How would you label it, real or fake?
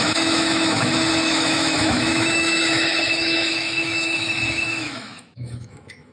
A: fake